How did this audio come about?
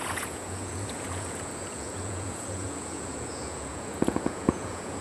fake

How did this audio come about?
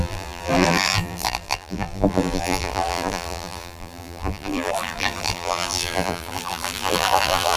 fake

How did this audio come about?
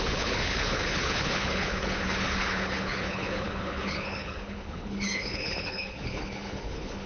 fake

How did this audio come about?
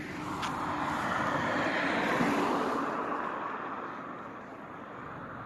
real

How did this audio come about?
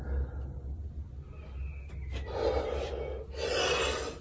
real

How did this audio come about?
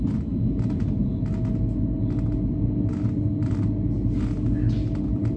real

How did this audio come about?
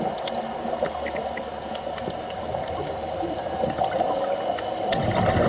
real